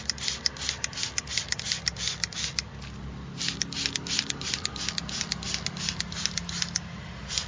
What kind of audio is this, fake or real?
real